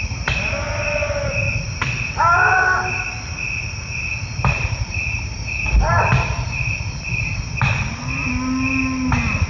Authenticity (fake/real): real